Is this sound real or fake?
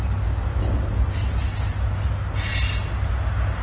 real